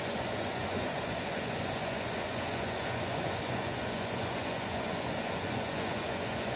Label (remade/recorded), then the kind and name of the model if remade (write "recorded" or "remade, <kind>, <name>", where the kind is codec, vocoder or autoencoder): remade, vocoder, Vocos